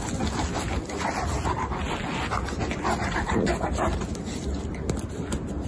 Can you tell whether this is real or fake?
real